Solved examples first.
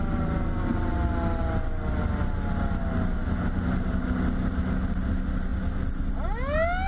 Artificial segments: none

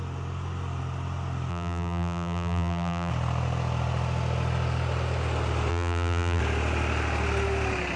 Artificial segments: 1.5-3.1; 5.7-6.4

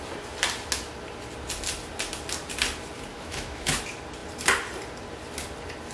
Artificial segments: 3.1-3.8